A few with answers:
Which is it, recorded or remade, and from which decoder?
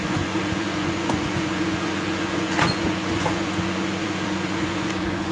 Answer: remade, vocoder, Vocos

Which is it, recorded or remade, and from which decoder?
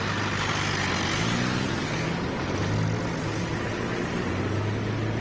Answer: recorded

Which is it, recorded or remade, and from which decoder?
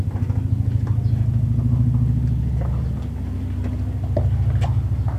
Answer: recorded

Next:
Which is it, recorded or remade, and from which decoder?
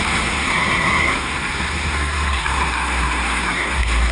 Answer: remade, codec, SNAC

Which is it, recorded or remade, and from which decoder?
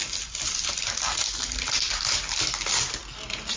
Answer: recorded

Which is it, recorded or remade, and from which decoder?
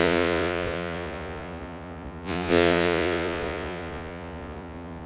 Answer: remade, vocoder, Vocos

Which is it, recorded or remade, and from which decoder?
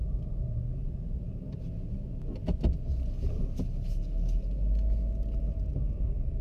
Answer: recorded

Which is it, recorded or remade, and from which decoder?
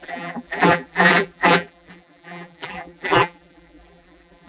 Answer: remade, vocoder, BigVGAN v2